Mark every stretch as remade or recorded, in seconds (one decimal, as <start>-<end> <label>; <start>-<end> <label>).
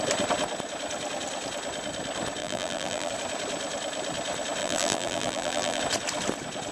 0.0-2.4 recorded; 2.4-3.1 remade; 3.1-4.6 recorded; 4.6-5.8 remade; 5.8-6.7 recorded